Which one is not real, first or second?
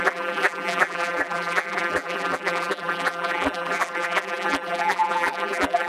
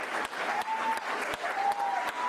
first